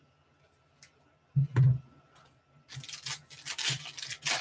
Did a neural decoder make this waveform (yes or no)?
no